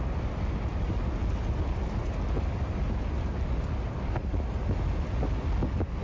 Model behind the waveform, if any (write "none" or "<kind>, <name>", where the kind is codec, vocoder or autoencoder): none